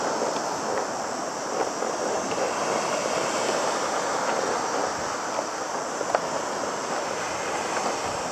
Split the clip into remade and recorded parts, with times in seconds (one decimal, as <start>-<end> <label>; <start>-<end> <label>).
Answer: 0.0-1.4 recorded; 1.4-2.8 remade; 2.8-8.3 recorded